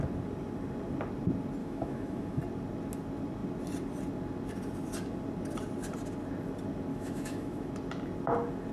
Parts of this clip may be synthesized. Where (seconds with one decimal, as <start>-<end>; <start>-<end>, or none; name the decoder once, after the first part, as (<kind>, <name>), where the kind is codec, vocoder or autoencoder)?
1.6-2.4 (autoencoder, DAC-VAE); 6.9-7.7